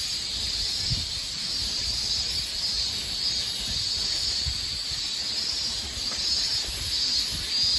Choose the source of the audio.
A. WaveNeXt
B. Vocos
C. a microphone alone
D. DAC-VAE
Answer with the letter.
C